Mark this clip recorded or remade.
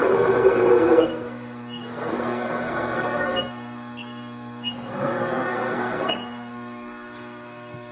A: remade